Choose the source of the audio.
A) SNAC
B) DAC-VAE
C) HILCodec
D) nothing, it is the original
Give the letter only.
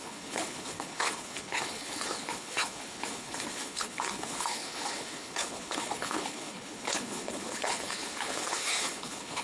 C